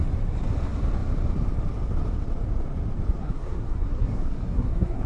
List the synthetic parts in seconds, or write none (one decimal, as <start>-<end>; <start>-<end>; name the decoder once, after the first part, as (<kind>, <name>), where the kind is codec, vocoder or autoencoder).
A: 3.2-5.1 (codec, SNAC)